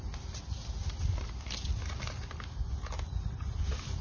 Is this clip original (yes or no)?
yes